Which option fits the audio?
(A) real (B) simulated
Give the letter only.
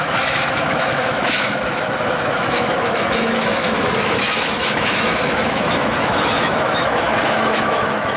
B